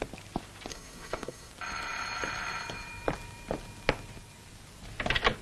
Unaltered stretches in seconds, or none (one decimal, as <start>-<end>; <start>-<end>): 0.0-0.7; 1.5-5.4